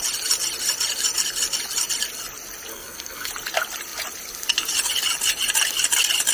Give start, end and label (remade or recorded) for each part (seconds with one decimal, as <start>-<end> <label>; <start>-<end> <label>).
0.0-2.7 recorded; 2.7-3.3 remade; 3.3-6.3 recorded